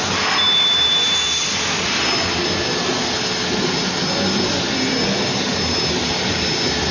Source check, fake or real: real